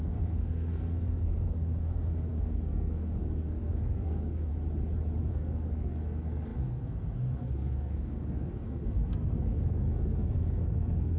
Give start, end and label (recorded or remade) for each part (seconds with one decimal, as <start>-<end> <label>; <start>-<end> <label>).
0.0-4.5 remade; 4.5-5.3 recorded; 5.3-11.2 remade